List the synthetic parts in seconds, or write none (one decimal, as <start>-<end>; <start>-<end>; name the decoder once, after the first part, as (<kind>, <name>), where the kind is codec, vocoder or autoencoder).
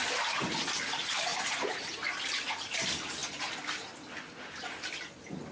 1.3-1.9 (vocoder, Vocos)